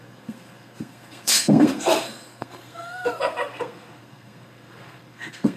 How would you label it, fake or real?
fake